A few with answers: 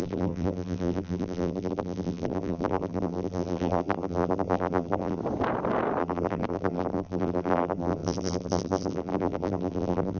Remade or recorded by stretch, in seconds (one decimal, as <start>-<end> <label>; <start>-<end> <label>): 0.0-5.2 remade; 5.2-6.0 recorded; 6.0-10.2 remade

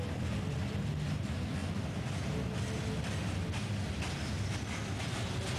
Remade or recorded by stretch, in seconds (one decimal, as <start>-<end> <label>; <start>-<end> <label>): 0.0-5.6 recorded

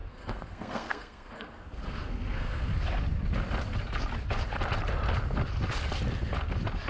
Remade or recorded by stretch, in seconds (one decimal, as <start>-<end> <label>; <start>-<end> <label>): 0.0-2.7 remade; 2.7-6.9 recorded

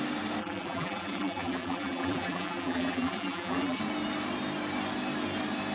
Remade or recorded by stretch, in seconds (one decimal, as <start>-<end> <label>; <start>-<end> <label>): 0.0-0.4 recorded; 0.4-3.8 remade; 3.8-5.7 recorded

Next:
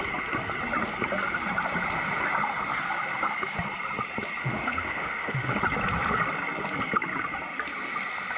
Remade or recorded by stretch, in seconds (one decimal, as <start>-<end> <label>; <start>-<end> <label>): 0.0-4.4 recorded; 4.4-5.6 remade; 5.6-8.4 recorded

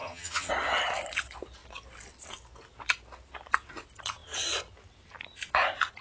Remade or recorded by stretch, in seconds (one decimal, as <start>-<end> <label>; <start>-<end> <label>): 0.0-0.5 remade; 0.5-6.0 recorded

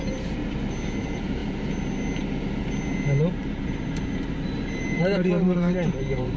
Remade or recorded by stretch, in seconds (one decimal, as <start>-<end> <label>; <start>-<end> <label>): 0.0-0.4 remade; 0.4-1.0 recorded; 1.0-1.4 remade; 1.4-3.3 recorded; 3.3-6.4 remade